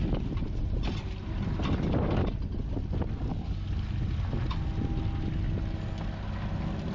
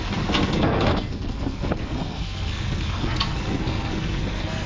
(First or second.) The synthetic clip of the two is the second